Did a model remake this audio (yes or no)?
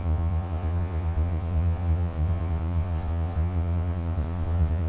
yes